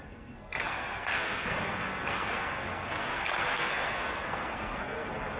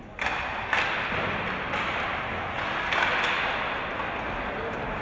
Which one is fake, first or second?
first